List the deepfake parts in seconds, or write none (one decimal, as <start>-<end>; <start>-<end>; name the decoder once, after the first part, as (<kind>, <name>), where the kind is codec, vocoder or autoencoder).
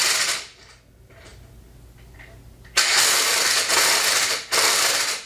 none